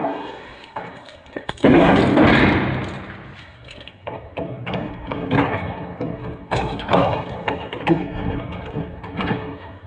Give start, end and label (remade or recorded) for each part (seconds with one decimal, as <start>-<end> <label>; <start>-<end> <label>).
0.0-2.0 remade; 2.0-3.4 recorded; 3.4-9.9 remade